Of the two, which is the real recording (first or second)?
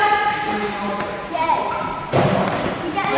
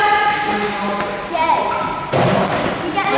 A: second